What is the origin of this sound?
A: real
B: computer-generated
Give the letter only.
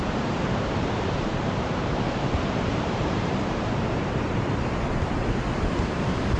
B